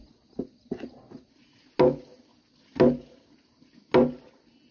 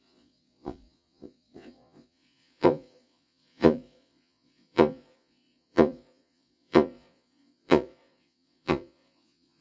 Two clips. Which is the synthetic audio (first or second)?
second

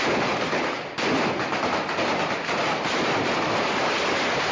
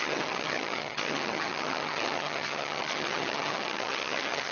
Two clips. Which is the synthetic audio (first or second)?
second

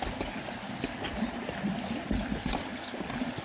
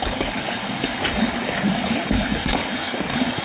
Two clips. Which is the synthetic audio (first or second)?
second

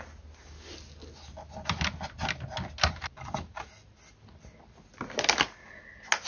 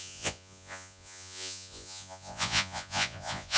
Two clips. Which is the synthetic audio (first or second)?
second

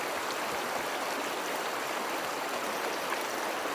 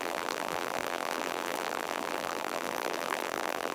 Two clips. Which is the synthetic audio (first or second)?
second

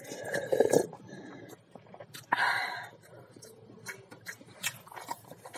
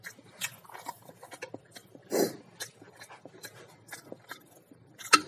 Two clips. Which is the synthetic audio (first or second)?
first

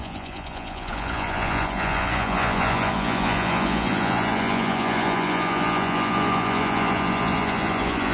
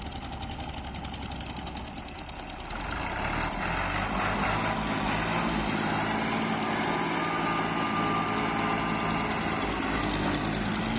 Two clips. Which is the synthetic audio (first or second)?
first